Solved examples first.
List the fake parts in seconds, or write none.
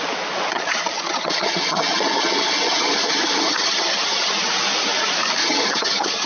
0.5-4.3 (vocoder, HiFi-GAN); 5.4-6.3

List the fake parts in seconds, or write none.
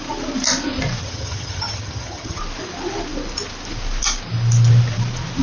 1.0-2.4 (vocoder, HiFi-GAN)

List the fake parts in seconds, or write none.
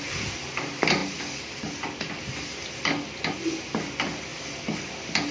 none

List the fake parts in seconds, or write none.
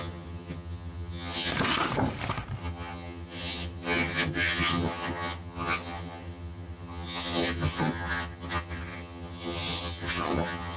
0.0-1.5 (vocoder, HiFi-GAN); 2.6-10.8